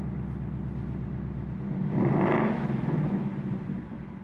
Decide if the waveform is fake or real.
real